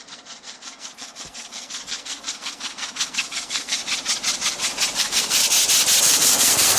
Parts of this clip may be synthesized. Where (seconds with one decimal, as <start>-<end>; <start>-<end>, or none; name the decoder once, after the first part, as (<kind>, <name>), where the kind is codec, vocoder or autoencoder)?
0.0-3.8 (codec, SNAC); 5.0-5.4; 6.0-6.8